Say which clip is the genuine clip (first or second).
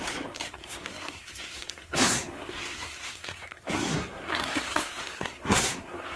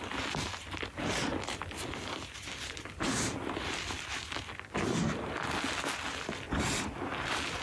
second